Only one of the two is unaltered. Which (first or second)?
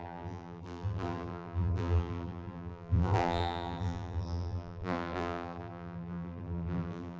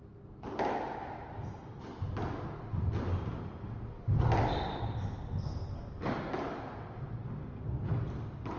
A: second